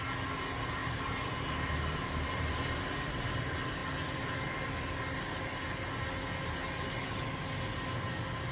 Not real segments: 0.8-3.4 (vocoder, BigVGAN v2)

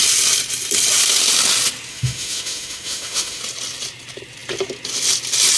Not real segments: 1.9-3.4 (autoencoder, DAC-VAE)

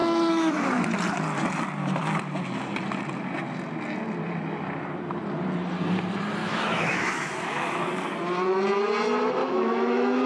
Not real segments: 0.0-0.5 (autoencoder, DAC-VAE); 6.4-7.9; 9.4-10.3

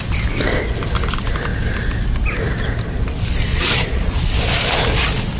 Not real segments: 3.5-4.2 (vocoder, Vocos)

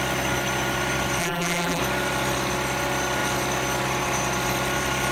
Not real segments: 1.2-1.8 (vocoder, BigVGAN v2)